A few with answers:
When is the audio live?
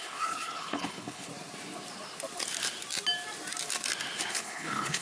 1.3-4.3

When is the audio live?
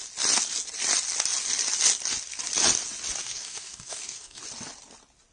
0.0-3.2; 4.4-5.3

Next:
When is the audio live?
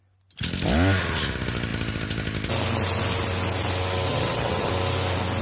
0.0-4.1; 4.7-5.4